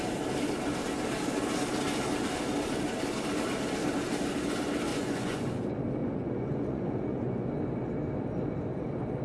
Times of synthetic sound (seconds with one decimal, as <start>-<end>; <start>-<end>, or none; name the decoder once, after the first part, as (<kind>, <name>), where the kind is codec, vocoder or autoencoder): 4.9-5.4 (vocoder, Vocos); 6.0-7.5